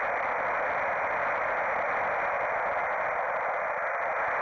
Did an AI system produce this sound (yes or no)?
no